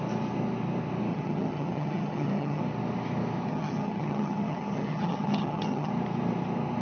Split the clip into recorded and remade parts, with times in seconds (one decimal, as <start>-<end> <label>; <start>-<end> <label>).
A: 0.0-1.1 recorded; 1.1-2.6 remade; 2.6-3.5 recorded; 3.5-5.9 remade; 5.9-6.8 recorded